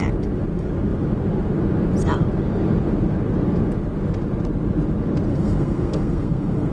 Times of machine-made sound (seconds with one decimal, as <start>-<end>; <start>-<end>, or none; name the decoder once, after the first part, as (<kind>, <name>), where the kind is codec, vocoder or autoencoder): 5.3-6.7 (codec, SNAC)